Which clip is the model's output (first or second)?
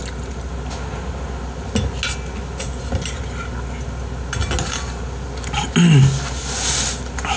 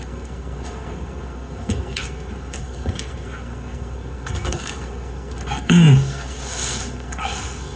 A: second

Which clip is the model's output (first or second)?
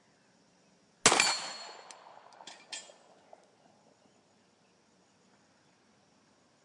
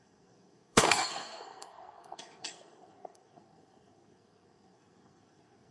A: second